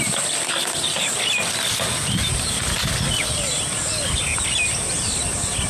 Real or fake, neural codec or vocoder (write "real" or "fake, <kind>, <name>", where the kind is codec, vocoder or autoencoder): real